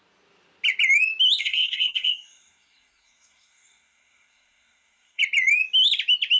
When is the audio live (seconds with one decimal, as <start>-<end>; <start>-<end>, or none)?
0.0-1.4; 5.2-6.4

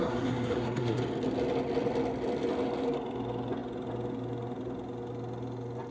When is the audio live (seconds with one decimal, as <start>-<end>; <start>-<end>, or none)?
1.0-5.9

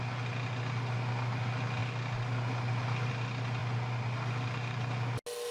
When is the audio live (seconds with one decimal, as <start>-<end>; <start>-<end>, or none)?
0.0-5.5

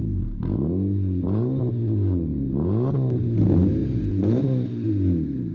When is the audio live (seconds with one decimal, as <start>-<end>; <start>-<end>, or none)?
0.0-5.5